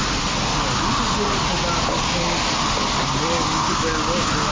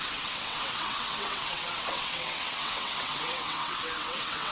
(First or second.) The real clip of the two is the first